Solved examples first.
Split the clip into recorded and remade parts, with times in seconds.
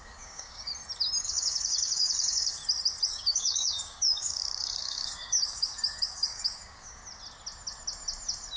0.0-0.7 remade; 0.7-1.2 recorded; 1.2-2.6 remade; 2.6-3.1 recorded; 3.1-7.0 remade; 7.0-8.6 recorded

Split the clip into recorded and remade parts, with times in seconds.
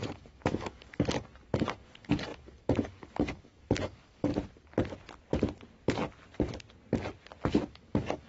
0.0-4.3 remade; 4.3-7.7 recorded; 7.7-8.3 remade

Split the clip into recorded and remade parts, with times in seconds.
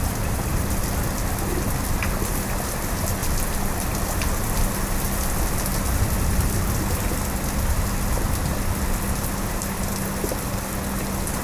0.0-11.4 recorded